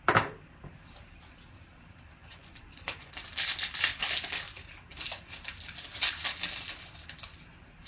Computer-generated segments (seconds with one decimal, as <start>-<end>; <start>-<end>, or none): 2.2-3.1